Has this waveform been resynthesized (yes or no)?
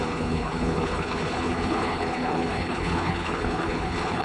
yes